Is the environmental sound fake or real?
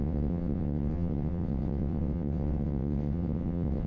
fake